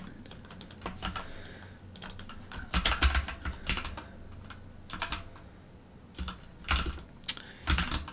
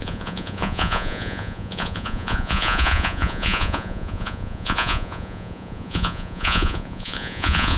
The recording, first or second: first